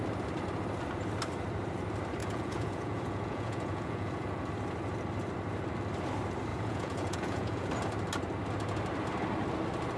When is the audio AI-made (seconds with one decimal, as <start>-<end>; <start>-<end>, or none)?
2.2-4.5; 6.5-7.7